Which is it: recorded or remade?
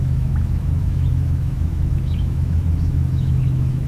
remade